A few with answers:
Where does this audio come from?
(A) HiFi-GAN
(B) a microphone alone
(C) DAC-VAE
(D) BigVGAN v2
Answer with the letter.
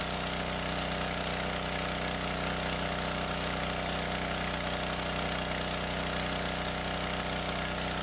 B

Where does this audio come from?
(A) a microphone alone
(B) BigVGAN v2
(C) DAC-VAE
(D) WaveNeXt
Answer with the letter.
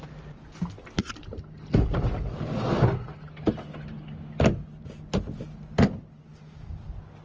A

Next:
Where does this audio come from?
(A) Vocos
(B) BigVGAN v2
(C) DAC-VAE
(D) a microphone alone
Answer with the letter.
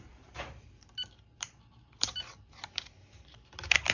B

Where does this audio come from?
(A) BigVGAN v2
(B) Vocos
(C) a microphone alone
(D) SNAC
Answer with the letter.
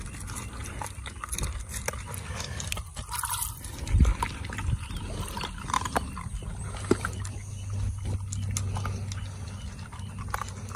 C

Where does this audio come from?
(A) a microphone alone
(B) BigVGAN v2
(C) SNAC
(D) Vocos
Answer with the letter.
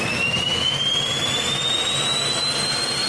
A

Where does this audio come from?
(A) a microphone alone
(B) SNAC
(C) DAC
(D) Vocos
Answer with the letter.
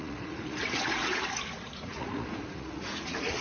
D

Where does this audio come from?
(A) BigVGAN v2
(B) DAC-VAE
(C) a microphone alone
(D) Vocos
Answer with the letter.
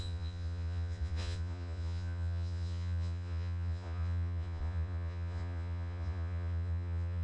D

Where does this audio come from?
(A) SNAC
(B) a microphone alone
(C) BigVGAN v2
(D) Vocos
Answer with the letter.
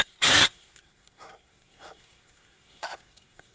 A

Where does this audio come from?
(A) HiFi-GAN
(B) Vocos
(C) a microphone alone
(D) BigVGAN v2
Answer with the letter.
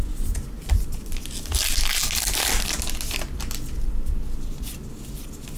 C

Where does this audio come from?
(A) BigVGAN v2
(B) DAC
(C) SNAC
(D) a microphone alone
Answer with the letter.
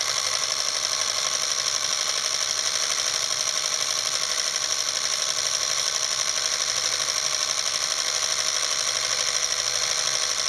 D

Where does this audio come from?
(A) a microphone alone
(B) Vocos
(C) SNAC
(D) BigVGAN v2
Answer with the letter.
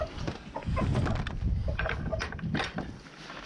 A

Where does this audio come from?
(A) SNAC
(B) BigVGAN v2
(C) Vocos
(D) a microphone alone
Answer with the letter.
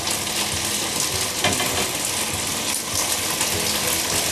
D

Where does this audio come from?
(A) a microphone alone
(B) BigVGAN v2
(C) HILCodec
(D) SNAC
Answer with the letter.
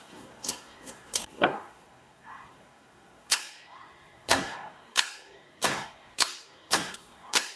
D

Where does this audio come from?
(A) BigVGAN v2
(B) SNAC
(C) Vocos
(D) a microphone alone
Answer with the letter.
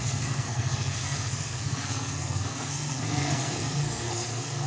B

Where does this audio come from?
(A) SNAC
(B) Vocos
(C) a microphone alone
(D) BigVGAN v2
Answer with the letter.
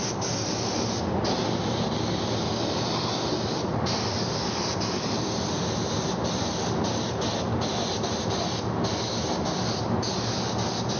C